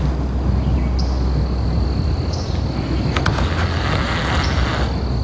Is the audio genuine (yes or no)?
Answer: yes